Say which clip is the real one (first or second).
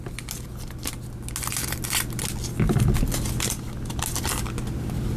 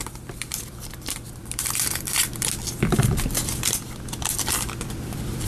first